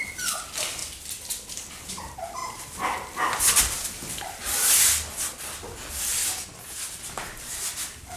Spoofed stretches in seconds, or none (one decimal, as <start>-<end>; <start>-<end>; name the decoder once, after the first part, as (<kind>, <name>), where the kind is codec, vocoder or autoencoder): 0.0-2.4 (vocoder, BigVGAN v2); 3.6-6.1